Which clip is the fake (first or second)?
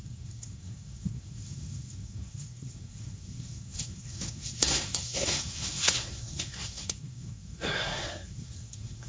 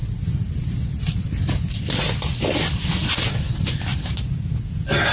first